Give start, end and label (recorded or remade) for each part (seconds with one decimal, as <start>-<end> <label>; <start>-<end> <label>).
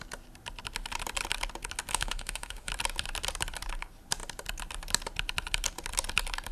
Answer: 0.0-1.9 recorded; 1.9-2.7 remade; 2.7-6.5 recorded